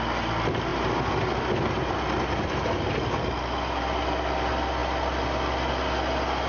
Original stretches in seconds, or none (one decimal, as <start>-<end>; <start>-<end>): 0.0-6.5